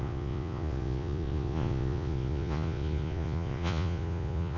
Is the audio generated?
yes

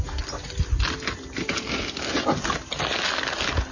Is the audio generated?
no